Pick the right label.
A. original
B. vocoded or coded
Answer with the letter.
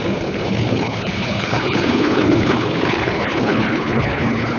B